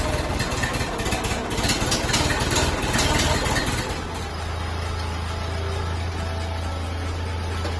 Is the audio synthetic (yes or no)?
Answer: no